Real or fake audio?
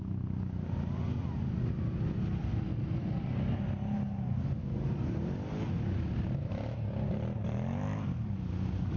real